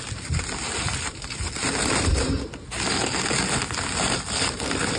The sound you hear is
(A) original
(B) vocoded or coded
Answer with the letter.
A